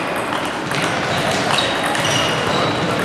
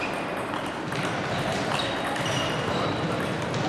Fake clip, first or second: second